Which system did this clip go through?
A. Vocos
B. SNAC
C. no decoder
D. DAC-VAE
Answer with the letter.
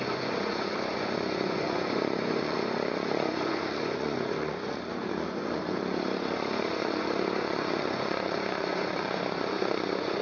A